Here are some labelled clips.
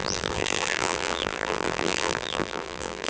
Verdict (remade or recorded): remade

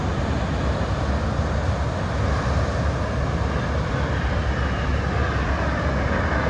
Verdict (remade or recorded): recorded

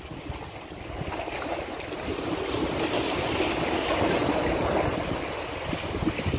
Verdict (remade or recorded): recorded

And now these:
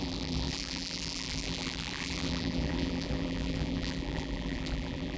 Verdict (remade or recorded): remade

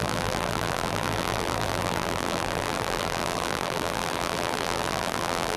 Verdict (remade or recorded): remade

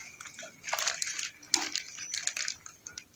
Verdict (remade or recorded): recorded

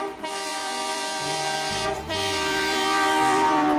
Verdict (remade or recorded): remade